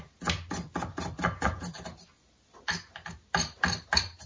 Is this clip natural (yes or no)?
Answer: yes